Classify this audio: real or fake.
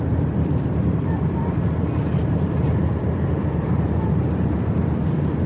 fake